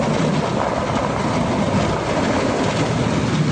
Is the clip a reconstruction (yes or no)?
no